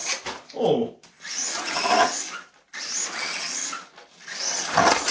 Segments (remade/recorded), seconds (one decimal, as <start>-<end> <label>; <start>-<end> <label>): 0.0-5.1 recorded